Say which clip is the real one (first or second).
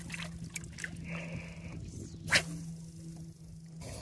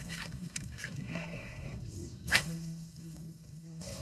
first